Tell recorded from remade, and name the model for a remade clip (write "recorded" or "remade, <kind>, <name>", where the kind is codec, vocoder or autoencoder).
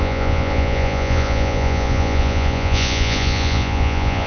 remade, vocoder, Vocos